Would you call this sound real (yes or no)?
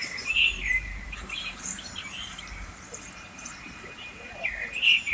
no